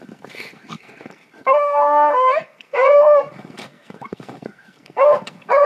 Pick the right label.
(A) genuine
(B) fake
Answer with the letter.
B